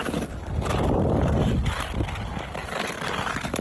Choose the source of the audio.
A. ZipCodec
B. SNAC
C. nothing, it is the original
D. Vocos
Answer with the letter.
C